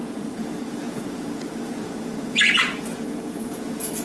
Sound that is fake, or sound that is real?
fake